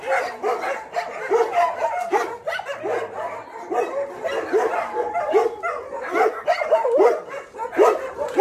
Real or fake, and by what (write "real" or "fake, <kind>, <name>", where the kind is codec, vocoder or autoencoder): real